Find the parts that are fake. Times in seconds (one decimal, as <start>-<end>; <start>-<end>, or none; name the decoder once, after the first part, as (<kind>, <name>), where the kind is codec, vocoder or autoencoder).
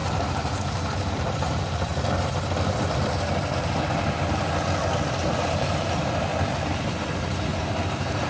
0.0-1.9 (vocoder, BigVGAN v2); 5.1-6.3; 6.9-8.3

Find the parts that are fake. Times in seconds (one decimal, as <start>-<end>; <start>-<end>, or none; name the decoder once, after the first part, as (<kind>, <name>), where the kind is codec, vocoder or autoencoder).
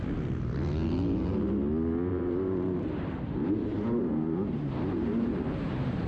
2.1-6.1 (vocoder, BigVGAN v2)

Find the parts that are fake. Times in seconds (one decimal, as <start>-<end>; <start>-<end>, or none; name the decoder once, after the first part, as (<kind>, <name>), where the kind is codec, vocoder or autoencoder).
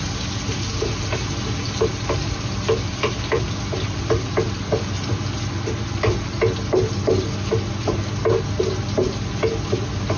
2.9-6.4 (vocoder, BigVGAN v2)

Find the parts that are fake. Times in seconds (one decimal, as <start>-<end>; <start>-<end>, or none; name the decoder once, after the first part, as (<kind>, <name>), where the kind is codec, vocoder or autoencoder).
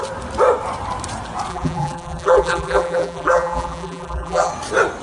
1.5-4.5 (vocoder, BigVGAN v2)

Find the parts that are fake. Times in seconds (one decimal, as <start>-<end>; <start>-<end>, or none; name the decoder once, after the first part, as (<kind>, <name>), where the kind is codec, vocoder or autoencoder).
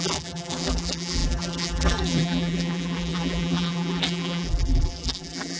0.0-5.6 (vocoder, BigVGAN v2)